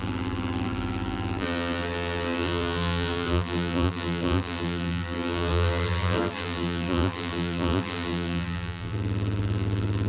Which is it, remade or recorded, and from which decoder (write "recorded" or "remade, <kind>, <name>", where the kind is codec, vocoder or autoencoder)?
remade, vocoder, BigVGAN v2